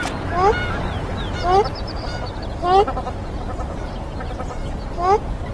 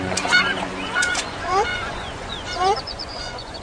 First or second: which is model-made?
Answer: second